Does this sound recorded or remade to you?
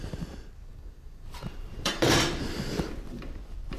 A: remade